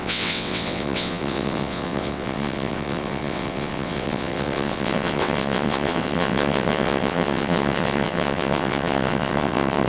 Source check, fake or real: fake